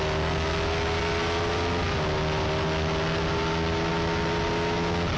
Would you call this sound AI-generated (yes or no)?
no